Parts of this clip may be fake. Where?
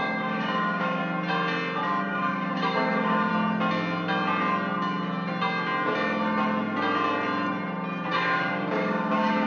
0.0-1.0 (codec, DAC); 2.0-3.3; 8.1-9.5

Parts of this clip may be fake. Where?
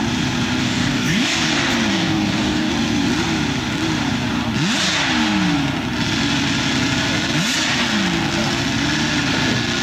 0.6-1.5 (codec, DAC); 1.9-2.7